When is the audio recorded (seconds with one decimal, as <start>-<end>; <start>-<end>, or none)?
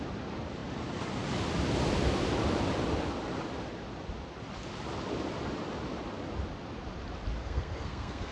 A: 0.0-7.4